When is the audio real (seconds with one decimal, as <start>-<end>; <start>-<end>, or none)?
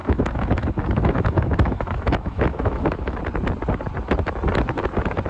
3.2-5.3